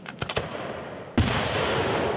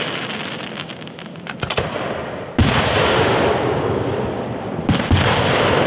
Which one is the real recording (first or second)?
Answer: first